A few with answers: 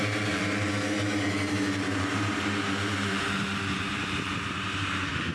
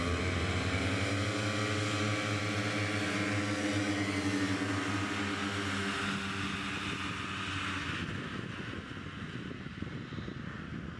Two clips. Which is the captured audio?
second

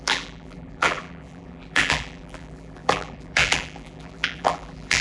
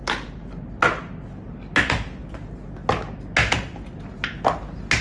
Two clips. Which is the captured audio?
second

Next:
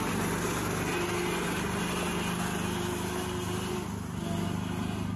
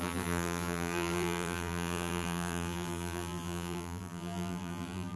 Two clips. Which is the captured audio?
first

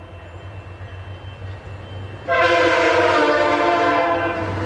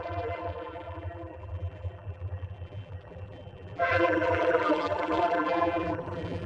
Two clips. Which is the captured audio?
first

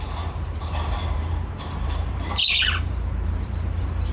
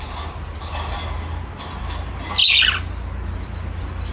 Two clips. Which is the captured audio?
second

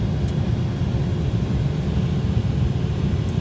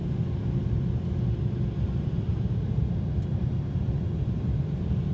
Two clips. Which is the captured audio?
first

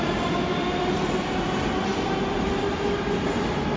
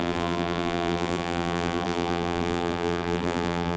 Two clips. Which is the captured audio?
first